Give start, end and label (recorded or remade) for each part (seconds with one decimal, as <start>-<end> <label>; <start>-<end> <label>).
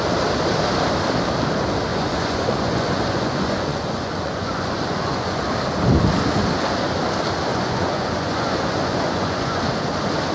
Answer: 0.0-1.9 recorded; 1.9-5.4 remade; 5.4-7.5 recorded; 7.5-9.6 remade; 9.6-10.3 recorded